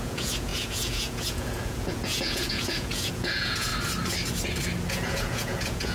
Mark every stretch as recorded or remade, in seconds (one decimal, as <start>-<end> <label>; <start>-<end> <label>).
0.0-3.7 remade; 3.7-4.9 recorded; 4.9-5.9 remade